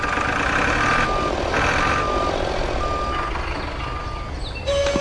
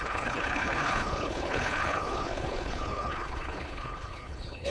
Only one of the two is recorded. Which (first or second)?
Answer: first